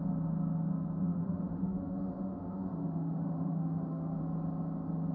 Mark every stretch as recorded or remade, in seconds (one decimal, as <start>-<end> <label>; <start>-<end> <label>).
0.0-1.1 recorded; 1.1-4.2 remade; 4.2-5.1 recorded